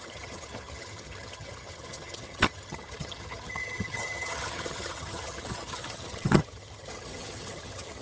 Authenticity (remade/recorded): remade